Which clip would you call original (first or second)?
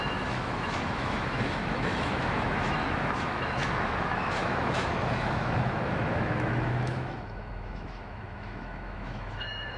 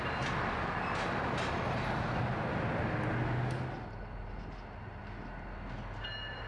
second